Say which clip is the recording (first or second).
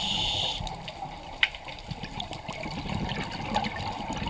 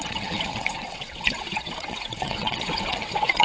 first